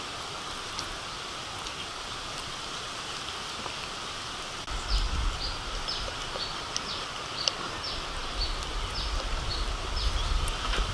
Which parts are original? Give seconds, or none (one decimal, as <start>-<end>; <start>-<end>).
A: 8.2-9.5